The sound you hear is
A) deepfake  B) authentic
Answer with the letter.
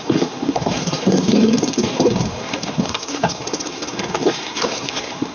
A